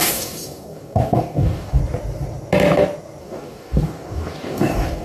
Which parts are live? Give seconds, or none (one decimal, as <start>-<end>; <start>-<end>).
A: 1.8-3.2

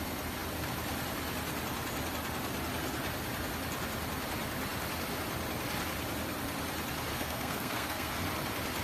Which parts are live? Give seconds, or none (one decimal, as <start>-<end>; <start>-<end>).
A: 0.0-7.1; 8.1-8.8

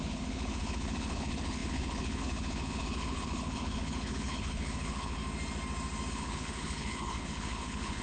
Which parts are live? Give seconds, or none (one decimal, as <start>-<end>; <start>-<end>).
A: 5.2-6.1

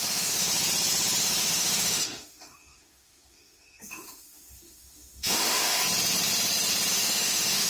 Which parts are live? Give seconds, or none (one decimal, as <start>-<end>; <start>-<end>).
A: 0.5-1.2; 5.8-6.9

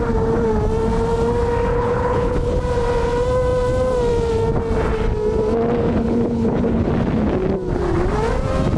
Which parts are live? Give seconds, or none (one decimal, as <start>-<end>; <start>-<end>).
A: 0.0-1.7; 2.6-5.8; 6.9-8.8

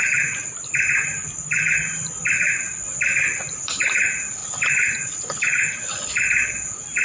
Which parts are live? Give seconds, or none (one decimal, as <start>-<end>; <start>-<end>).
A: 0.0-7.0

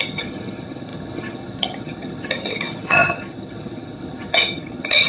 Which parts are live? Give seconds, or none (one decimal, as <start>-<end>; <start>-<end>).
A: none

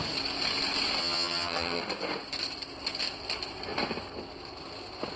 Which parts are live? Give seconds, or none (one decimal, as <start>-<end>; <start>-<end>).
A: 0.0-1.0; 1.8-5.2